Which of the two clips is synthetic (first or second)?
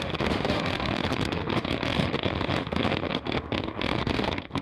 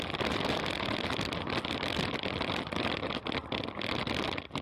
first